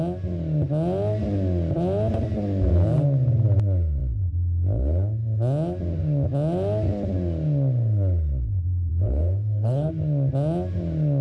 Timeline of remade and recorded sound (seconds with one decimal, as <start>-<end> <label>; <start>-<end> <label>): 0.0-8.9 recorded; 8.9-9.9 remade; 9.9-11.2 recorded